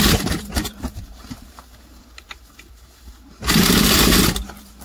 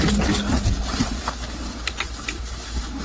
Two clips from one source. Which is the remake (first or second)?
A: first